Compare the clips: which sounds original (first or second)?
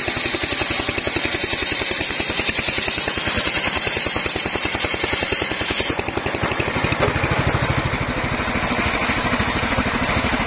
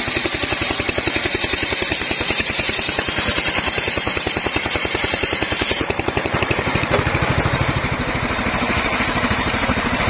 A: first